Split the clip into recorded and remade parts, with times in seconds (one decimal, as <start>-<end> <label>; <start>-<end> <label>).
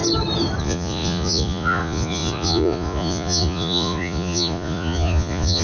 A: 0.0-0.6 recorded; 0.6-5.6 remade